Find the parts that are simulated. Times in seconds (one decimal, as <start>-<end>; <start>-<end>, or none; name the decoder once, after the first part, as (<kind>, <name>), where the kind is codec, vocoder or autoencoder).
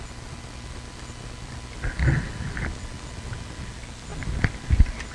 none